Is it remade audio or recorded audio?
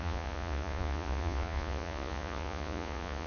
remade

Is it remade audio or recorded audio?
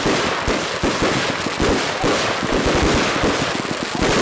recorded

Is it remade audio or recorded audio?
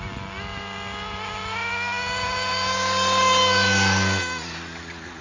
recorded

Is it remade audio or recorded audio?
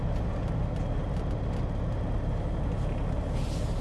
recorded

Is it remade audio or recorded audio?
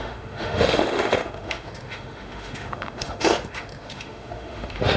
remade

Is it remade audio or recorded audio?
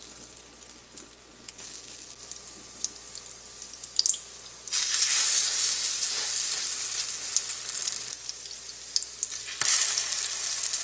recorded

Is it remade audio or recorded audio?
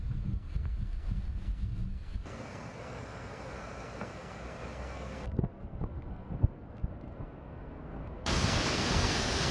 remade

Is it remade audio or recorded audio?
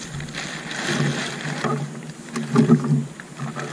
recorded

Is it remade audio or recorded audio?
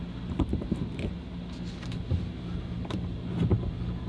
recorded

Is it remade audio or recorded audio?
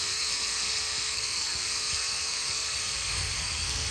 remade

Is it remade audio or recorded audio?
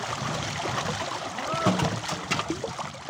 recorded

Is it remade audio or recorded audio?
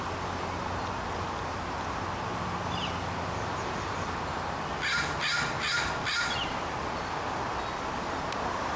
recorded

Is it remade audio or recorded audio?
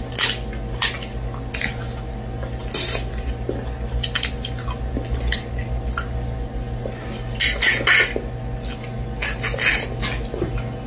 recorded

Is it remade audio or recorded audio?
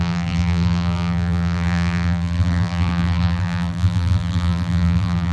remade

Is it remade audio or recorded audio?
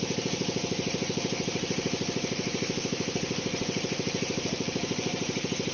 recorded